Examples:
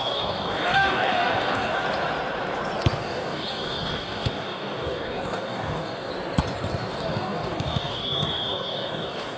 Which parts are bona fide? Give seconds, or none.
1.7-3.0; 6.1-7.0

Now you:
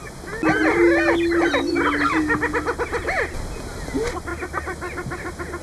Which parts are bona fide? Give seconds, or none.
0.0-5.6

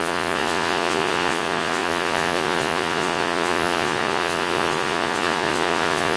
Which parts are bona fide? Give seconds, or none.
none

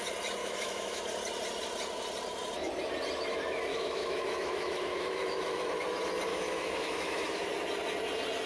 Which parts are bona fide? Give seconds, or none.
0.0-0.4; 1.0-3.7; 5.7-6.3; 7.5-8.5

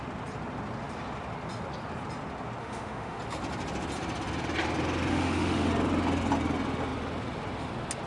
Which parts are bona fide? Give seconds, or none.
0.0-2.6; 3.2-5.1; 5.7-8.1

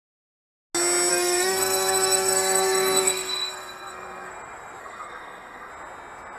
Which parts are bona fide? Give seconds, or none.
0.0-1.1; 4.3-4.8; 5.7-6.4

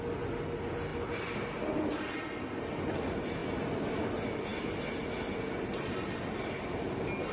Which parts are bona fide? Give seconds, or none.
0.0-7.3

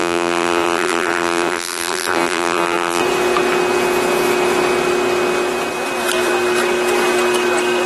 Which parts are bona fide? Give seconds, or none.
3.0-7.9